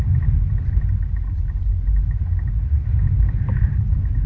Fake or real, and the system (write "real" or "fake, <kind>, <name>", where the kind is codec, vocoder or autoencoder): real